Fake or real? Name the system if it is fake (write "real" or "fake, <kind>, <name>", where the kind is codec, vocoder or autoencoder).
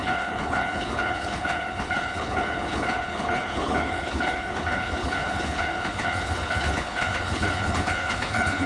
fake, codec, HILCodec